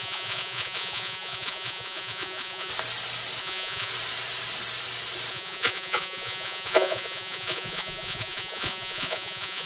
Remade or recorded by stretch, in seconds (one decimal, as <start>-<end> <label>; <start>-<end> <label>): 0.0-2.7 remade; 2.7-3.4 recorded; 3.4-3.9 remade; 3.9-5.3 recorded; 5.3-9.7 remade